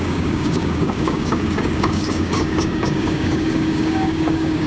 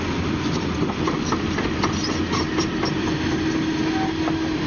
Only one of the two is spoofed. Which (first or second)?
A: first